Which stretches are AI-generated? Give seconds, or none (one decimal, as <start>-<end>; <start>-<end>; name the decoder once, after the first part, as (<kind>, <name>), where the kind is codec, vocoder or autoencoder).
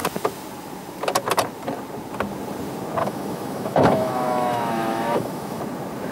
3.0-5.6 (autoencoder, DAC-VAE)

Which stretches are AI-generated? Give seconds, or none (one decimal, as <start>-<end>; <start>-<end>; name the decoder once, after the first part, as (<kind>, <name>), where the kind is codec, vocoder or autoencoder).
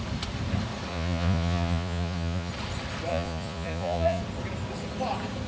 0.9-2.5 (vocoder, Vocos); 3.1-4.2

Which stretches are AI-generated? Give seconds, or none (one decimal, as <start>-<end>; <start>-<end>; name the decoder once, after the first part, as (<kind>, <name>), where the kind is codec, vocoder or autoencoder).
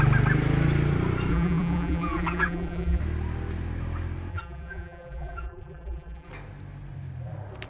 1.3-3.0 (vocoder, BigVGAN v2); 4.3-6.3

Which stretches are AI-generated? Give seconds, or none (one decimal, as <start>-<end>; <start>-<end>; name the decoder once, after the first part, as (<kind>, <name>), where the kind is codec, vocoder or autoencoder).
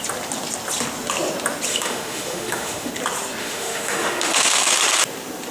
1.7-2.9 (autoencoder, DAC-VAE); 3.4-4.7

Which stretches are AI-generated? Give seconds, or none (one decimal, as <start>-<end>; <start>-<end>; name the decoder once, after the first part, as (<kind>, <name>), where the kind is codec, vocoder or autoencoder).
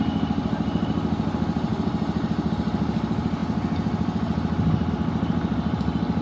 none